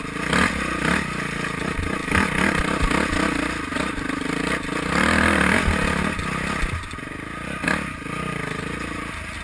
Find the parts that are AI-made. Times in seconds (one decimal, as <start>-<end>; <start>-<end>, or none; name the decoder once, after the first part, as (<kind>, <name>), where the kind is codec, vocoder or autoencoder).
none